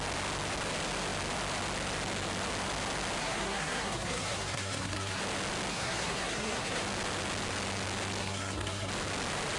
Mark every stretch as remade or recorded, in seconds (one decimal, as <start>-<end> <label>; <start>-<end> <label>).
0.0-3.2 recorded; 3.2-5.2 remade; 5.2-5.7 recorded; 5.7-6.8 remade; 6.8-8.2 recorded; 8.2-8.9 remade; 8.9-9.6 recorded